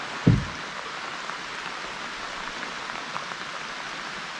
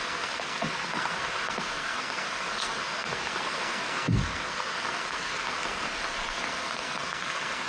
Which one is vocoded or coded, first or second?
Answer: second